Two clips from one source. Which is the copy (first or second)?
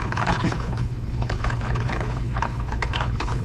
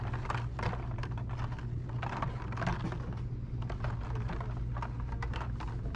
first